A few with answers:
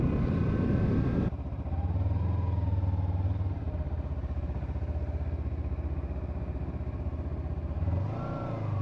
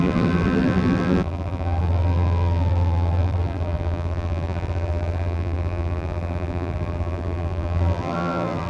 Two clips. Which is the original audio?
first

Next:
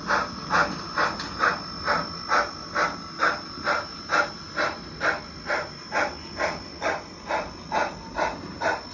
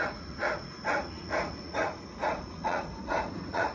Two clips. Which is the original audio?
first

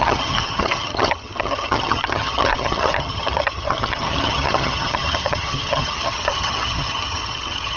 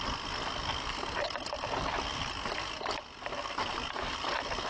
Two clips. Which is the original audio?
second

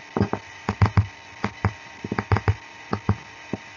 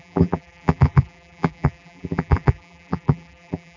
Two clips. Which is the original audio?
first